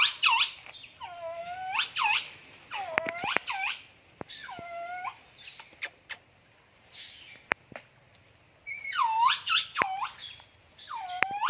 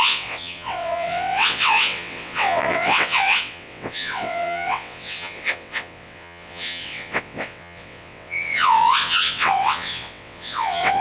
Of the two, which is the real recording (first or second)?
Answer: first